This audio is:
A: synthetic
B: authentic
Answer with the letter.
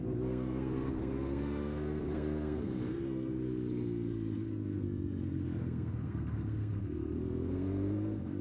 A